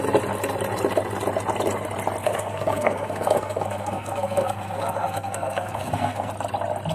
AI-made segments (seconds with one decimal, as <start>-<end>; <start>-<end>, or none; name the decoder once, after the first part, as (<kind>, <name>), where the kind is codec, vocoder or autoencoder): 2.2-6.3 (codec, SNAC)